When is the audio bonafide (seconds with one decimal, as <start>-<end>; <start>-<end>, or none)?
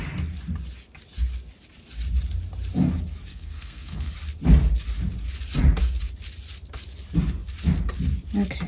0.0-3.3; 4.1-8.7